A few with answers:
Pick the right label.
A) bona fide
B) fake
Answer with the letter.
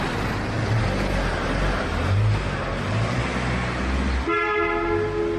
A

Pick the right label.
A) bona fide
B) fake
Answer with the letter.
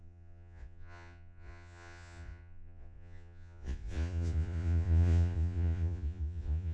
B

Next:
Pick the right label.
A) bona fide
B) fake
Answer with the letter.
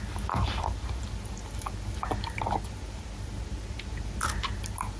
A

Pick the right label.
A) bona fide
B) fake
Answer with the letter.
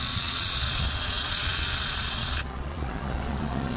B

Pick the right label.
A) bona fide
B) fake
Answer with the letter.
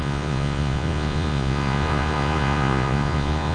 B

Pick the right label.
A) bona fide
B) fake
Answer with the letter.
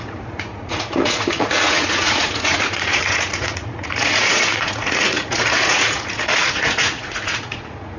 B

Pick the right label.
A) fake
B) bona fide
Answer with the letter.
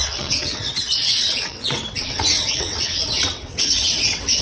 A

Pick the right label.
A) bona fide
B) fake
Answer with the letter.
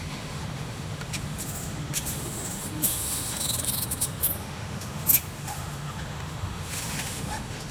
B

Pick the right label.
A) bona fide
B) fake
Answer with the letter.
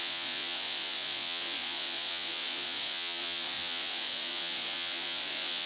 B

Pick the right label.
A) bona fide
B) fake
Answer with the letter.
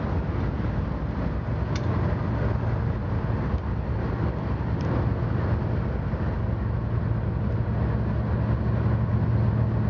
A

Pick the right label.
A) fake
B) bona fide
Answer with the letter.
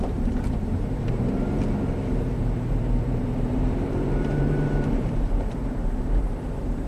A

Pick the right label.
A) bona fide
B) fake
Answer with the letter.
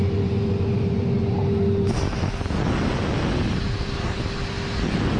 A